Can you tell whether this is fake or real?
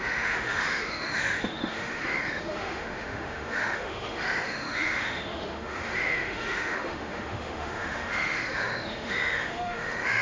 fake